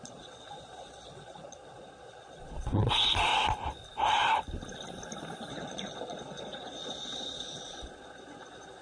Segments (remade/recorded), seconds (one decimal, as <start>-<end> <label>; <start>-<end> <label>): 0.0-3.3 remade; 3.3-5.5 recorded; 5.5-8.8 remade